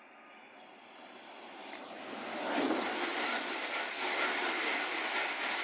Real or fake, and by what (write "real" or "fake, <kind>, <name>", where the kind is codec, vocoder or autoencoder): real